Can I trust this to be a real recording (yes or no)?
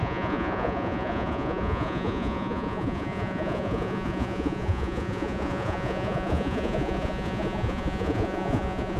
no